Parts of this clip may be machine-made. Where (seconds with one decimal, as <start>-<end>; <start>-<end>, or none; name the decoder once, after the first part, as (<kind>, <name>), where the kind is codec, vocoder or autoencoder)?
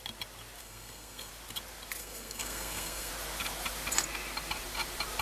0.6-1.3 (codec, SNAC); 2.0-3.1